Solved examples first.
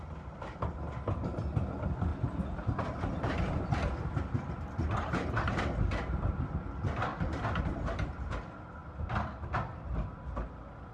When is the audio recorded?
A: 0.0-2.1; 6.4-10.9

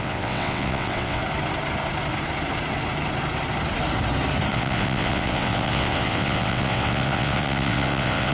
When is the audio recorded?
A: 1.2-4.5

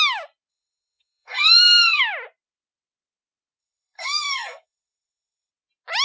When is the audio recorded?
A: 0.0-0.5; 2.0-3.6; 5.5-6.0

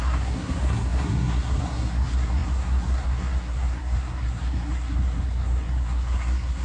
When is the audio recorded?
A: none

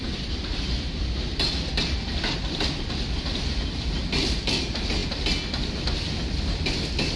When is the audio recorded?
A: 0.0-7.2

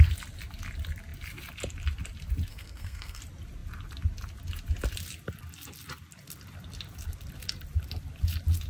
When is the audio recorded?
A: 0.0-2.5; 3.2-8.7

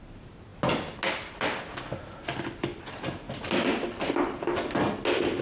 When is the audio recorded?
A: 0.0-5.4

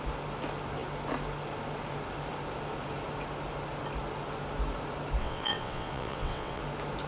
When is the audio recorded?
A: 0.0-5.2; 6.6-7.1